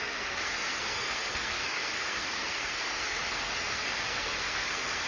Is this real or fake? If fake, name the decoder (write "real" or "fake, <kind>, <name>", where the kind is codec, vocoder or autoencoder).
fake, codec, SNAC